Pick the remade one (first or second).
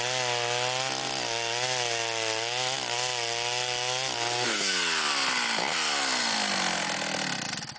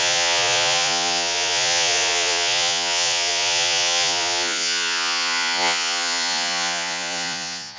second